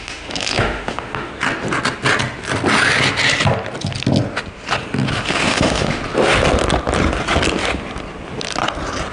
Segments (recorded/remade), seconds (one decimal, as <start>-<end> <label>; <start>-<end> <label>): 0.0-1.3 remade; 1.3-5.2 recorded; 5.2-6.0 remade; 6.0-9.1 recorded